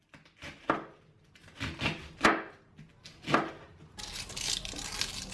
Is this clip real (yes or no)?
yes